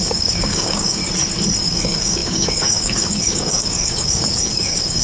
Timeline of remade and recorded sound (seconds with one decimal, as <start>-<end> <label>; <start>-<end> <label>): 0.0-1.0 remade; 1.0-1.6 recorded; 1.6-5.0 remade